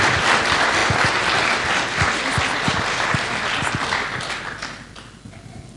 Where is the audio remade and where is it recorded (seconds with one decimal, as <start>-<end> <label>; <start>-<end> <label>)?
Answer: 0.0-5.8 recorded